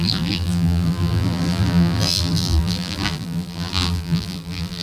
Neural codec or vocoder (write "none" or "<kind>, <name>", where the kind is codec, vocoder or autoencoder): vocoder, BigVGAN v2